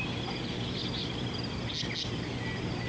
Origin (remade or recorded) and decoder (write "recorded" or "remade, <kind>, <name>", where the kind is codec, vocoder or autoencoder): recorded